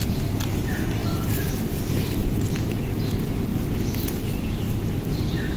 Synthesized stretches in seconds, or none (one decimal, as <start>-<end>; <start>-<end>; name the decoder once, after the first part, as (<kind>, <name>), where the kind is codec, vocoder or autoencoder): 2.2-2.9 (vocoder, BigVGAN v2)